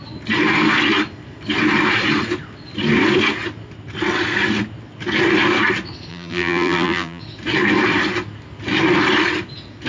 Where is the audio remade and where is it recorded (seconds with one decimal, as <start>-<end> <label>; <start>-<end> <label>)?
0.0-6.1 recorded; 6.1-7.2 remade; 7.2-9.9 recorded